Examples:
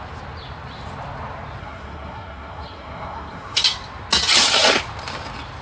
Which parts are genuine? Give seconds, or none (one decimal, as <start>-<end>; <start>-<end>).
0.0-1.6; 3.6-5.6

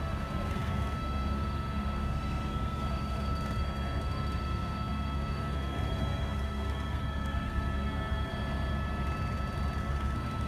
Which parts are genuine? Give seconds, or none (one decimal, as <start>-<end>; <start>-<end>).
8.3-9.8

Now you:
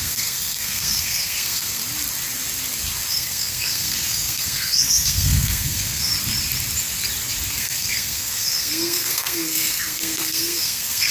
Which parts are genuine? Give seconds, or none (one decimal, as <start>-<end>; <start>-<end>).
1.8-3.1; 6.1-7.5

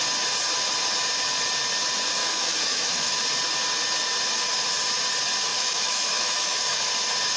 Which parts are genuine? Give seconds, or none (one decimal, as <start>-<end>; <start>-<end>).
0.0-2.2; 3.2-5.5; 6.9-7.4

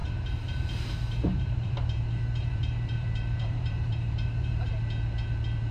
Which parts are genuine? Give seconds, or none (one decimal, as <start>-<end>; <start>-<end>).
0.9-1.3; 4.7-5.7